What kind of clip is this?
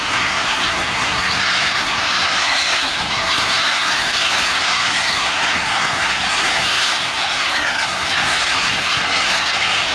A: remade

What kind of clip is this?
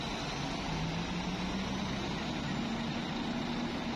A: recorded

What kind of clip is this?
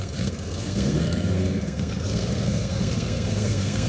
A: remade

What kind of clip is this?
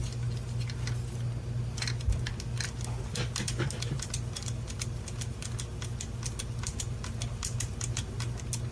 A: recorded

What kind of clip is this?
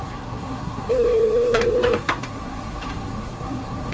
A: remade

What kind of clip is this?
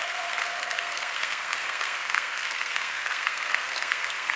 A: remade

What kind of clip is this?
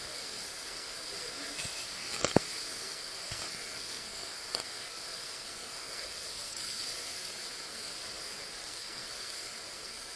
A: remade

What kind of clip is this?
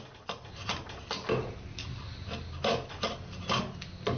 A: recorded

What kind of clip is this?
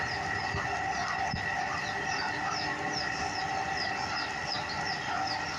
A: recorded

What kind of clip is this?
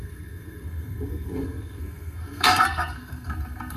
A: remade